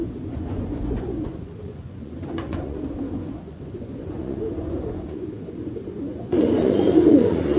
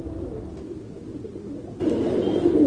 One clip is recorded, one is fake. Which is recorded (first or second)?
second